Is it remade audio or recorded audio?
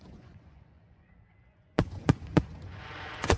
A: remade